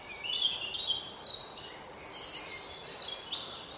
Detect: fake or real real